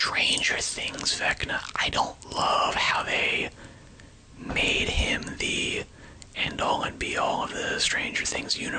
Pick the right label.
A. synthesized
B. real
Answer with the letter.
B